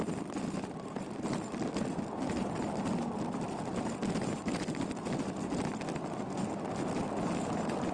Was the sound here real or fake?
real